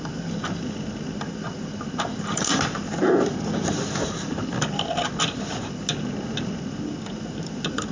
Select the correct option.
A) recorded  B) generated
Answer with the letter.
A